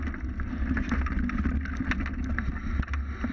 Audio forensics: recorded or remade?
recorded